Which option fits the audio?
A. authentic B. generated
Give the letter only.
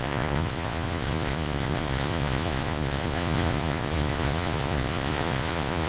B